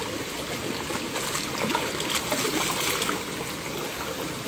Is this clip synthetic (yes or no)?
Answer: no